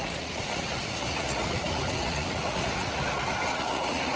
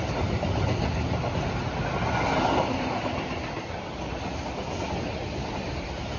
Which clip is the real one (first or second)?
second